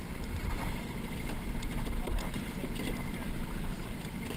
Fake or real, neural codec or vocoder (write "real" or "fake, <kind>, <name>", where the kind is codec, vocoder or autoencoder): real